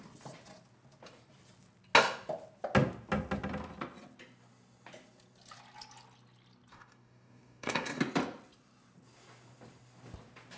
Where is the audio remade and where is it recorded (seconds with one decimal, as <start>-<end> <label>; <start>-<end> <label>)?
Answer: 0.0-6.7 recorded; 6.7-8.0 remade; 8.0-10.6 recorded